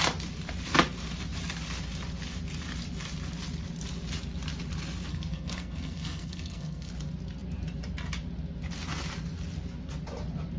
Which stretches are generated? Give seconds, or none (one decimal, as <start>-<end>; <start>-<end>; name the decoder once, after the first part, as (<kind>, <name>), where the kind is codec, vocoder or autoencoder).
5.1-6.9 (codec, SNAC)